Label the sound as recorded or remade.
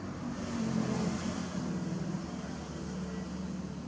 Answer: recorded